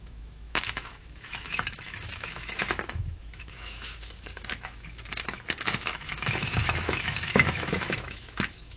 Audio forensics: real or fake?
fake